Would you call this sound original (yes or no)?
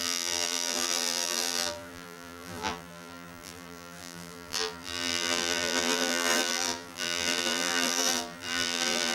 no